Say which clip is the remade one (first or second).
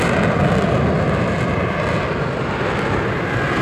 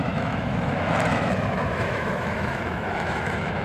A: second